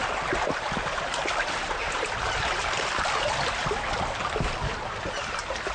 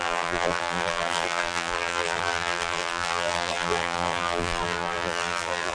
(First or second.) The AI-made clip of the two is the second